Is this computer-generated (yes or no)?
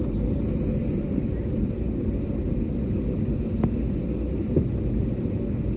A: no